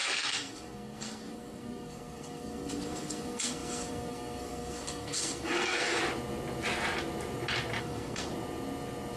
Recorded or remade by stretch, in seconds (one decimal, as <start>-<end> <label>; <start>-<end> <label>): 0.0-6.0 remade; 6.0-7.8 recorded; 7.8-8.3 remade; 8.3-9.2 recorded